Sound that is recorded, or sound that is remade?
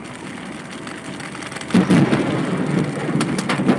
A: recorded